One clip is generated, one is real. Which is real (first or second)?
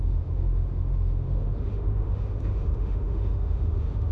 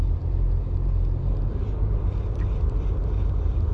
second